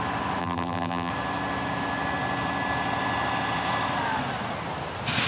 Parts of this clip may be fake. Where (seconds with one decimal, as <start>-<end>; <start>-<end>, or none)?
0.4-1.1